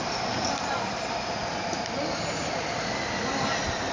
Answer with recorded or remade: recorded